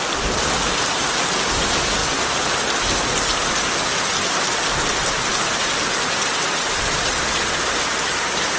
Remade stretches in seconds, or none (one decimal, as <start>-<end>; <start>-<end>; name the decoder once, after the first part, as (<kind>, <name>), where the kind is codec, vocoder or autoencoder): none